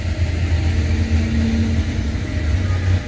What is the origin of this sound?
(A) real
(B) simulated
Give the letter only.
A